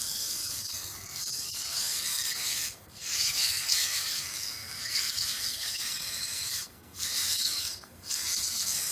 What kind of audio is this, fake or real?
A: fake